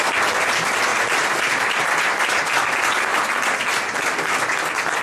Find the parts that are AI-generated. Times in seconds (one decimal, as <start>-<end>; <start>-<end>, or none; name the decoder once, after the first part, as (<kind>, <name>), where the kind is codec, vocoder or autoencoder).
0.9-2.0 (vocoder, BigVGAN v2)